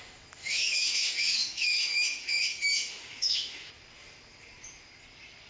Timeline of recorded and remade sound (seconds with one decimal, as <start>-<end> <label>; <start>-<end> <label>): 0.0-0.4 recorded; 0.4-3.7 remade; 3.7-5.5 recorded